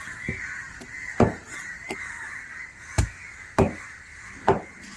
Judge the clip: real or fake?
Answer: real